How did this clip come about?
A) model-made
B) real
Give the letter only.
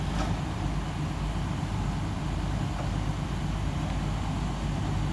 B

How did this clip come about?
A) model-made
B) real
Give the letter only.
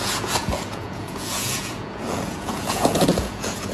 A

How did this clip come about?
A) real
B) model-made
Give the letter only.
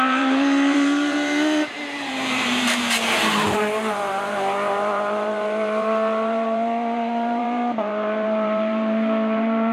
B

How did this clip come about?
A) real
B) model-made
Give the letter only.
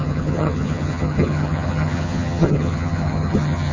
B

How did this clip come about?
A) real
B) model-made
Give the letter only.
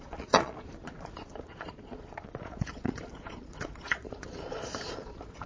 B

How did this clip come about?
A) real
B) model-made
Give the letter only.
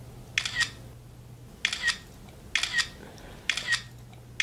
A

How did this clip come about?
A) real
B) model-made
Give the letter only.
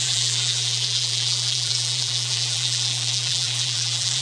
B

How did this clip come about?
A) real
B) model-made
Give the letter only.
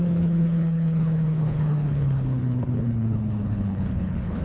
B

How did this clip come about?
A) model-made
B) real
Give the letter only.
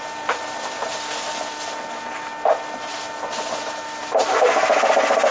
B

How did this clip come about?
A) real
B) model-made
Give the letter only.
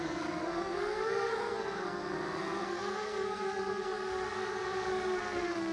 B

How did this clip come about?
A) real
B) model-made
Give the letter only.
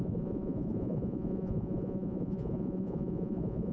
B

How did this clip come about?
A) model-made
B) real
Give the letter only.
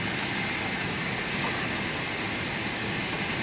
B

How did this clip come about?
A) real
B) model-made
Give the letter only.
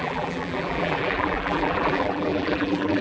B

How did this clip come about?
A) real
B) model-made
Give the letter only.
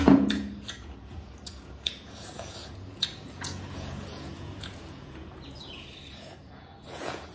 B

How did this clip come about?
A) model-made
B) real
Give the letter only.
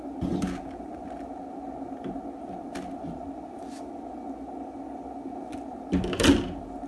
B